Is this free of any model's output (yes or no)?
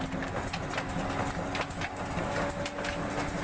yes